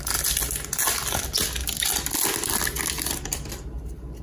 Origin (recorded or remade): recorded